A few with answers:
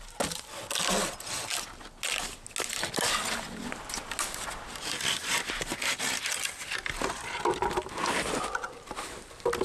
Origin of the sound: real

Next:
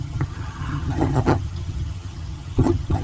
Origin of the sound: fake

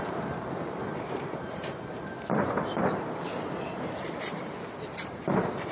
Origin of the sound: fake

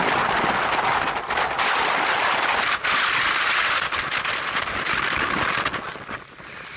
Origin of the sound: real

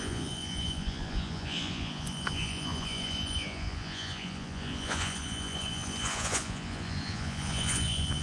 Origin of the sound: fake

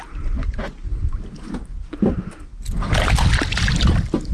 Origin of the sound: real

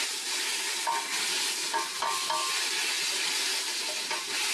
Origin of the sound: real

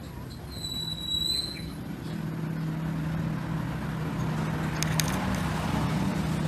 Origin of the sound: real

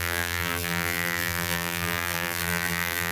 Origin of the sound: fake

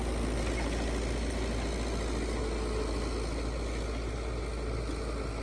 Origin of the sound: real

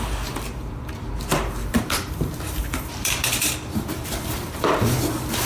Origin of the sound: fake